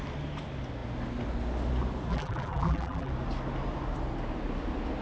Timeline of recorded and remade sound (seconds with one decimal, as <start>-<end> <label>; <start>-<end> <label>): 0.0-2.1 recorded; 2.1-3.1 remade; 3.1-5.0 recorded